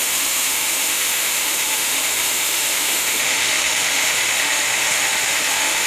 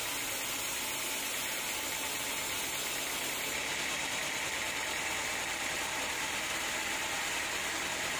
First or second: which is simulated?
first